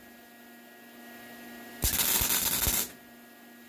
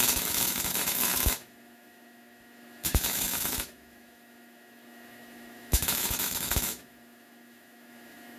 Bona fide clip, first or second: first